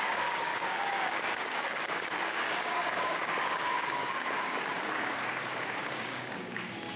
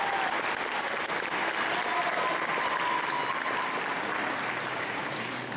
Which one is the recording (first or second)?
second